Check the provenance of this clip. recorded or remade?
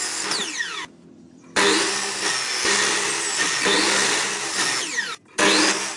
recorded